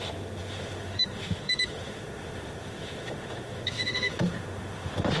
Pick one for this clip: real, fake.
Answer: fake